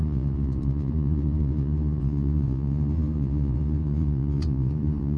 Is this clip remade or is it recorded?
remade